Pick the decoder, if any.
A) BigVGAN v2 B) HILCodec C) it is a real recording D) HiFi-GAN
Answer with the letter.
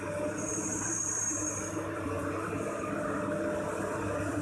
A